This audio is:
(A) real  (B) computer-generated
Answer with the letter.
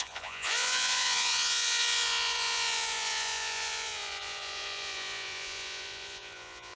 B